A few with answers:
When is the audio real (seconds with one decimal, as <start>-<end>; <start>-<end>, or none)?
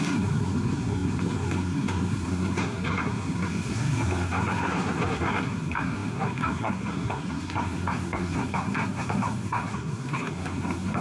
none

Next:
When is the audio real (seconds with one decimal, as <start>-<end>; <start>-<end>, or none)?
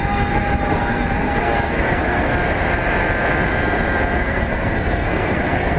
2.3-4.2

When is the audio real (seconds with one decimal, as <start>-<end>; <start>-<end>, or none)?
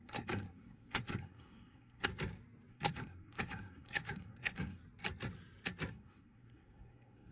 2.1-2.7; 4.8-5.9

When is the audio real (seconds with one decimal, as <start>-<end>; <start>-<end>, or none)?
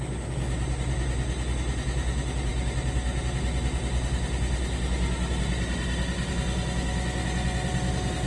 0.0-8.3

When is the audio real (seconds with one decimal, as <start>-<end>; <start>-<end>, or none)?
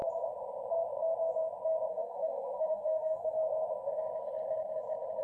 0.0-1.9; 3.4-5.2